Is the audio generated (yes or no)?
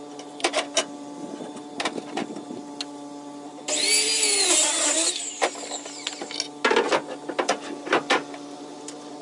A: no